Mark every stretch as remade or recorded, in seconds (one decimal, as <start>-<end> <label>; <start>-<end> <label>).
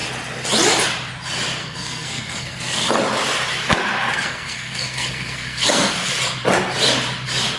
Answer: 0.0-1.6 recorded; 1.6-2.9 remade; 2.9-4.1 recorded; 4.1-6.1 remade; 6.1-7.6 recorded